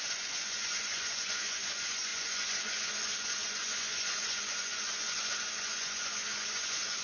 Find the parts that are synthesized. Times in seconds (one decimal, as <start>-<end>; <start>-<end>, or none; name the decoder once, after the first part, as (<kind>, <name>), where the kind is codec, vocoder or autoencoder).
0.0-7.0 (vocoder, Vocos)